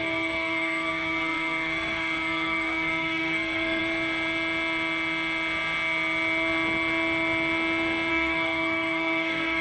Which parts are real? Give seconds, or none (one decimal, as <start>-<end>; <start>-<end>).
3.8-8.1